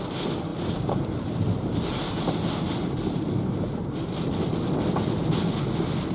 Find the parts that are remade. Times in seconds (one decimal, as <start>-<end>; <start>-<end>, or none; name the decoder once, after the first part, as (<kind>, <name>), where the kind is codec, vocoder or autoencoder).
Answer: 0.5-4.2 (vocoder, BigVGAN v2)